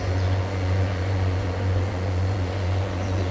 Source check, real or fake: fake